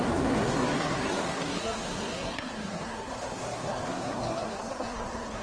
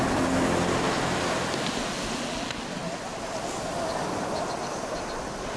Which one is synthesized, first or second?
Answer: first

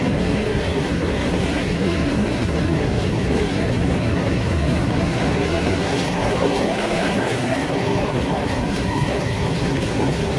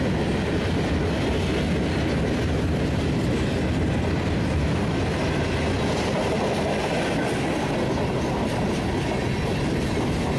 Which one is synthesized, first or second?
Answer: first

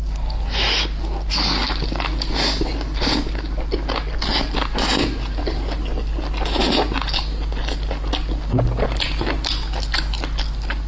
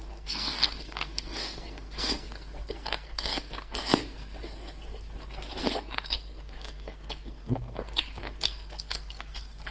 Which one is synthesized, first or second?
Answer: second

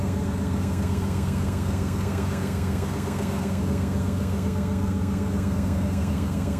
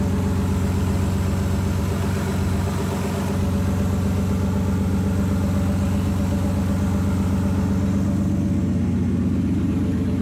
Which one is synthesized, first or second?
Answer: first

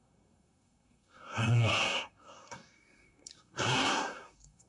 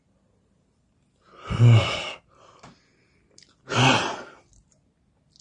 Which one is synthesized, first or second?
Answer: first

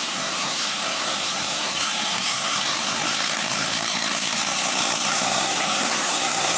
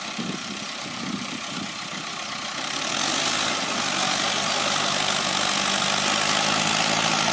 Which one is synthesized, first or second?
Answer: first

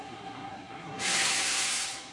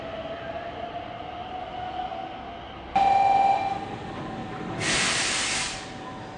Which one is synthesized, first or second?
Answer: first